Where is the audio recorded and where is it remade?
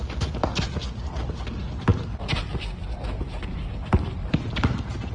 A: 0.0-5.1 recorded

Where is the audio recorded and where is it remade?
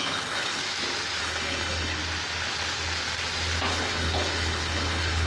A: 0.0-0.6 remade; 0.6-1.2 recorded; 1.2-2.0 remade; 2.0-3.7 recorded; 3.7-5.3 remade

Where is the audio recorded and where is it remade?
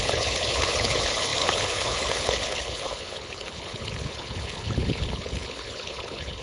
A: 0.0-6.4 remade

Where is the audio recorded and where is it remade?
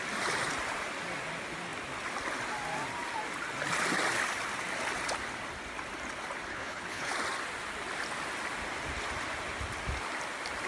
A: 0.0-6.5 recorded; 6.5-7.1 remade; 7.1-10.7 recorded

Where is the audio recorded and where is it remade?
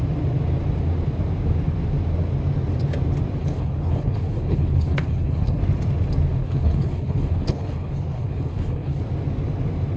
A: 0.0-3.4 recorded; 3.4-5.6 remade; 5.6-6.4 recorded; 6.4-9.0 remade; 9.0-10.0 recorded